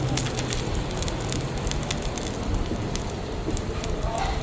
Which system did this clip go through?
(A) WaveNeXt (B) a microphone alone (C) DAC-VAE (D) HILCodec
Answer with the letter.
B